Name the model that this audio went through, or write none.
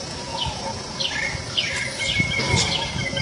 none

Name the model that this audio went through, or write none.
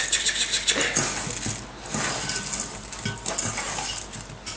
none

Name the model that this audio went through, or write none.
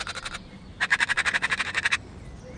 none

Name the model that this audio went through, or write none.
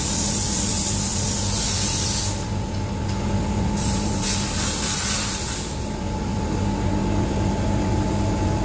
none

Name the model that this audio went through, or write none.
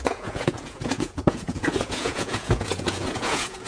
vocoder, Vocos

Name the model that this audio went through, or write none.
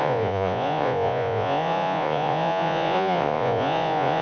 vocoder, Vocos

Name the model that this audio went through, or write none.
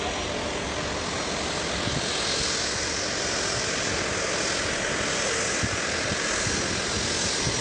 none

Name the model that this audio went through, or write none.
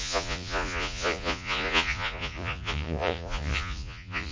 vocoder, Vocos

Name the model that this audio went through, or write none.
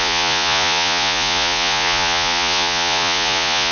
vocoder, Vocos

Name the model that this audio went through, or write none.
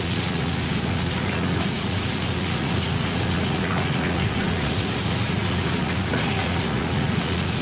vocoder, Vocos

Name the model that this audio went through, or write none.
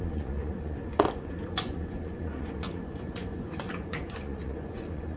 vocoder, Vocos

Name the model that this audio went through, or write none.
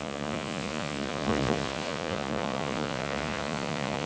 vocoder, Vocos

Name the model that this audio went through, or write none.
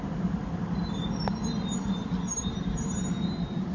none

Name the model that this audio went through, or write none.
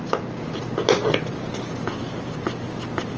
none